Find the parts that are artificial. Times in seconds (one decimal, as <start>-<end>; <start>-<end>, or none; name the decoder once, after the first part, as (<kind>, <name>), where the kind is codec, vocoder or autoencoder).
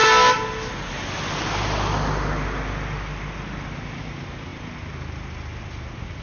none